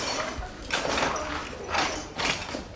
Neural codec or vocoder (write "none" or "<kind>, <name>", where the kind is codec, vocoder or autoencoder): none